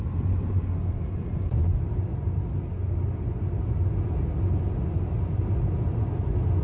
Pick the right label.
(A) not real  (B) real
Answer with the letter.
B